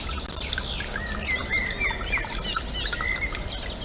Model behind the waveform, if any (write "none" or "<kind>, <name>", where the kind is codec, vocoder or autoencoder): none